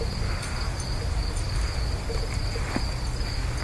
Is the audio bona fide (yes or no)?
yes